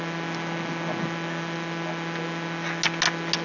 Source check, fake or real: real